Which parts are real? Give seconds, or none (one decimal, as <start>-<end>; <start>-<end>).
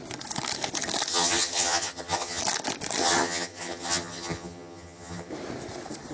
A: 0.0-1.1; 2.4-3.0; 5.3-6.1